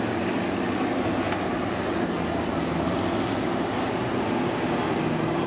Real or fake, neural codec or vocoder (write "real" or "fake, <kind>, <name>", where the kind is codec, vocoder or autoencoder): real